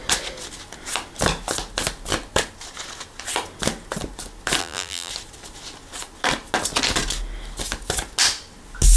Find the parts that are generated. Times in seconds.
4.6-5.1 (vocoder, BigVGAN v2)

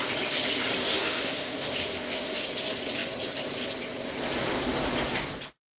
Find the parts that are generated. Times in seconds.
0.8-2.4 (autoencoder, DAC-VAE)

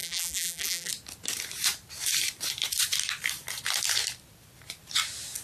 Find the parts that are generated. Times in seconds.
0.0-0.9 (vocoder, BigVGAN v2)